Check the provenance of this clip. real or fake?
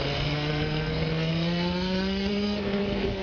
fake